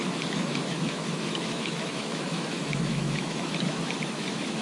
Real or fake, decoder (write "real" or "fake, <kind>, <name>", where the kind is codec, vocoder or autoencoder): fake, autoencoder, DAC-VAE